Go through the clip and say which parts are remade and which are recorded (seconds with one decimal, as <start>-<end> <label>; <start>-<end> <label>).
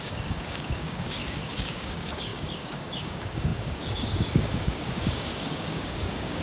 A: 0.0-6.4 remade